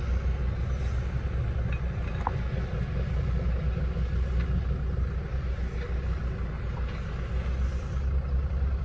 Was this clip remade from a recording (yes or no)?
no